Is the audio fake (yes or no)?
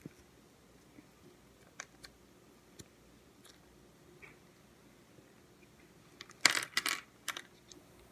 no